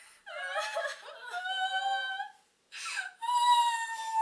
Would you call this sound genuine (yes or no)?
yes